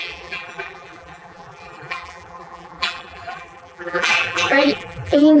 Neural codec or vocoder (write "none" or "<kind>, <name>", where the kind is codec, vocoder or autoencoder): vocoder, BigVGAN v2